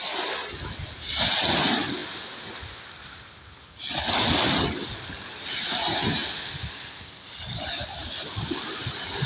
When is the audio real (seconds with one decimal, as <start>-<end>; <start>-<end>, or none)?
0.0-9.3